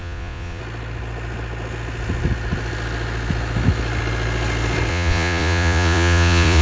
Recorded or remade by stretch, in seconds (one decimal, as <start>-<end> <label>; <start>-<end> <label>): 0.0-0.6 remade; 0.6-4.9 recorded; 4.9-6.6 remade